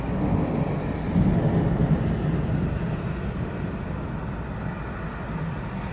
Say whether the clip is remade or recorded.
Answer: recorded